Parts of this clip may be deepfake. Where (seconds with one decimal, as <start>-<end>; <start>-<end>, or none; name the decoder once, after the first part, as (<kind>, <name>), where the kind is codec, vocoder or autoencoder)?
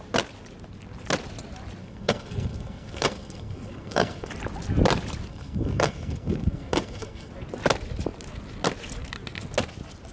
1.8-4.3 (codec, SNAC); 5.3-7.3